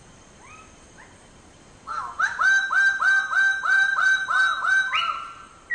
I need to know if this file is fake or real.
real